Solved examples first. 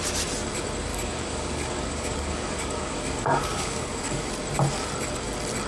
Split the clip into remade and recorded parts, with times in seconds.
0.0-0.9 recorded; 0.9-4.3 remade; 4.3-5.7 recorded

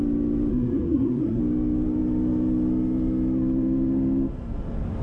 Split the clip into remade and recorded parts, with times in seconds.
0.0-0.5 recorded; 0.5-1.4 remade; 1.4-5.0 recorded